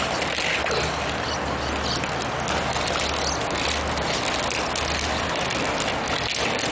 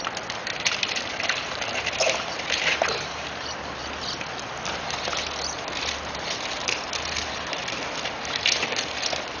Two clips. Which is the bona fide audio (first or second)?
first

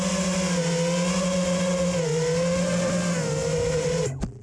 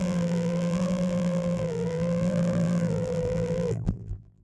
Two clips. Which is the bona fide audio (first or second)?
first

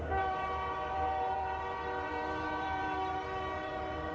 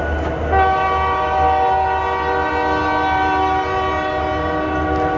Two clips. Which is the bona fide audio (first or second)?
second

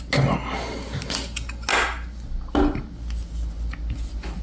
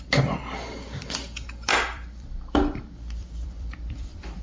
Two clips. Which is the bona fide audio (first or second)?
first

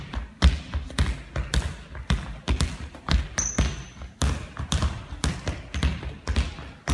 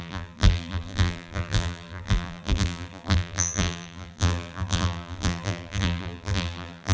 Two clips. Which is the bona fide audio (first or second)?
first